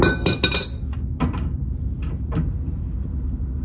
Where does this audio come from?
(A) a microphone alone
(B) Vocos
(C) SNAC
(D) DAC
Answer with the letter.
A